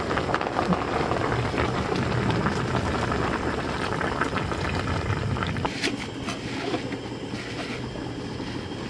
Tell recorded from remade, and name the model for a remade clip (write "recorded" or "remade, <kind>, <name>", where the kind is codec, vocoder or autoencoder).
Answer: recorded